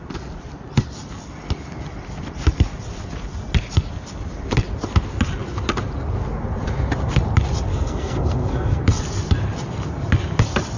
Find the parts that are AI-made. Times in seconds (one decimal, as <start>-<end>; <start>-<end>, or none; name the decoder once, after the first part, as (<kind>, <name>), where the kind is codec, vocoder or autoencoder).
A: 7.7-8.8 (codec, SNAC)